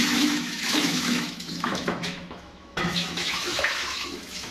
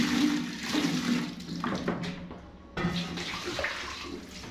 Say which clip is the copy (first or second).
first